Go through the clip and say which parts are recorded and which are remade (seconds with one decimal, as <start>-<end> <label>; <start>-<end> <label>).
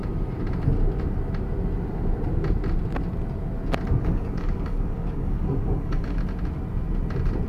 0.0-4.0 recorded; 4.0-6.2 remade; 6.2-7.5 recorded